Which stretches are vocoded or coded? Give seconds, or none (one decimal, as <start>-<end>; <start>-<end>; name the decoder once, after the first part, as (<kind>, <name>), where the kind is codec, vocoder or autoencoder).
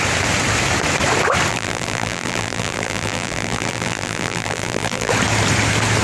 1.5-5.1 (vocoder, BigVGAN v2)